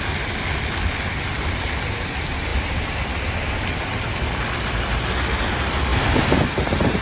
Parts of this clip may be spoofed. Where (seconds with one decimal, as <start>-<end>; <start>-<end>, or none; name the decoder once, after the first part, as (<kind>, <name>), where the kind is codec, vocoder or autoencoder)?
none